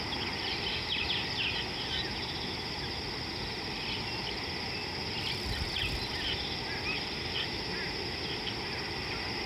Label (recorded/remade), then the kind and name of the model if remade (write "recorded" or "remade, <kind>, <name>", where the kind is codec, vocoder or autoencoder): recorded